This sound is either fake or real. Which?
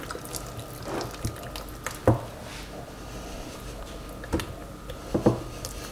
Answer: real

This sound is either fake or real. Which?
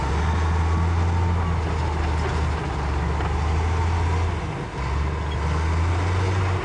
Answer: real